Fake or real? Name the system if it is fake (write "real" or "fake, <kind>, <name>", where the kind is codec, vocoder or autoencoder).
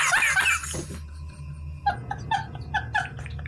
real